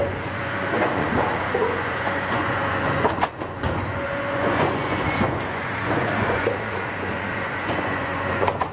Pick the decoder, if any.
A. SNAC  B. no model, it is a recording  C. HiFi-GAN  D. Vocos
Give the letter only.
D